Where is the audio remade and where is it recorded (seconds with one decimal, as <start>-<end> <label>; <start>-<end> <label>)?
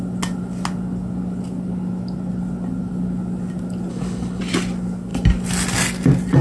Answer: 0.0-3.9 recorded; 3.9-4.4 remade; 4.4-6.4 recorded